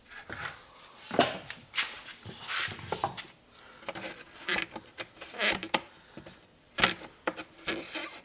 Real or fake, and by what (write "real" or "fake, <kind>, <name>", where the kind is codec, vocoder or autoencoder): fake, vocoder, BigVGAN v2